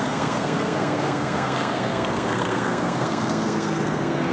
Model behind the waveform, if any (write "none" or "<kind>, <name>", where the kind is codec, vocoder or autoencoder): codec, SNAC